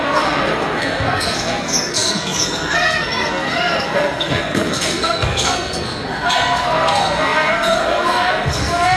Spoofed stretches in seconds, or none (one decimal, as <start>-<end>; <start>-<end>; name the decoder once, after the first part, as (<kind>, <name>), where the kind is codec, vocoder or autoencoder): 0.0-9.0 (codec, SNAC)